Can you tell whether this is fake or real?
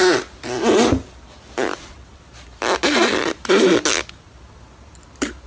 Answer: real